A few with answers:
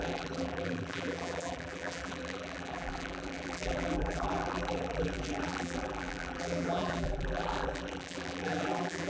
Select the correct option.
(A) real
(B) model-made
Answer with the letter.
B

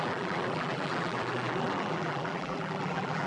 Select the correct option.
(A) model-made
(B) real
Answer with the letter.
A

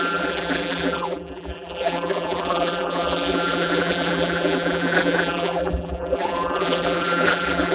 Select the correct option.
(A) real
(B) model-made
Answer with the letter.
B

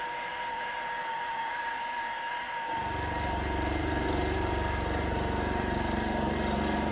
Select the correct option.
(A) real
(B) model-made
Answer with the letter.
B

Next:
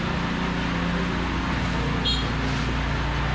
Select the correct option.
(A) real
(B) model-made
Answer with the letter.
A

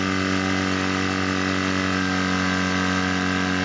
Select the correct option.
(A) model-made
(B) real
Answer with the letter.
B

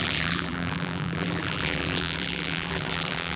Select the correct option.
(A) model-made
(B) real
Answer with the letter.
A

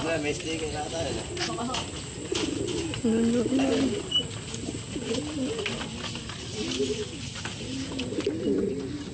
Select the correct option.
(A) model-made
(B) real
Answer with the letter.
B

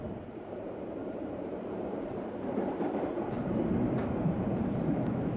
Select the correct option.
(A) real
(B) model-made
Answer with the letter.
B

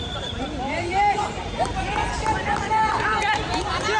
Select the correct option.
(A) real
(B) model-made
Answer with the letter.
B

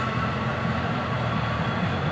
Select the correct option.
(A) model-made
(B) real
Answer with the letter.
B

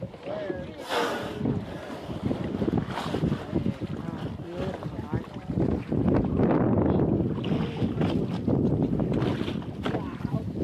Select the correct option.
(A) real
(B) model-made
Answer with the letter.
A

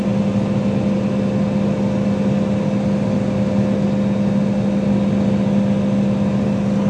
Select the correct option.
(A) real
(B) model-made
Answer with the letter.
A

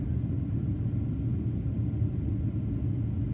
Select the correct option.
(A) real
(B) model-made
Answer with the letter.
A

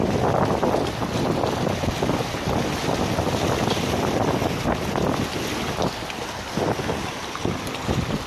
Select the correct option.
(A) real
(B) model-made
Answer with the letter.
A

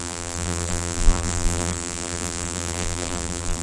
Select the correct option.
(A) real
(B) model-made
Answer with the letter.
B